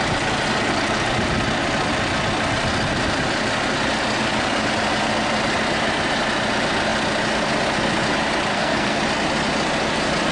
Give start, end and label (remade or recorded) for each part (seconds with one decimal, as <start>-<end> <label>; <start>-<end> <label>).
0.0-8.5 recorded; 8.5-9.0 remade; 9.0-10.3 recorded